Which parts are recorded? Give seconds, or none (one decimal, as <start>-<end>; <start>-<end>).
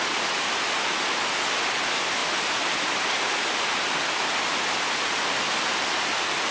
0.0-6.5